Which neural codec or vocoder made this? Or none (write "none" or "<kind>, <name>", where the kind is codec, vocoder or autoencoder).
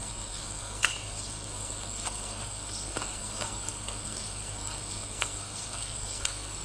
codec, SNAC